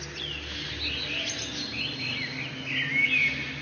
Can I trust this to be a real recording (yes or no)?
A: yes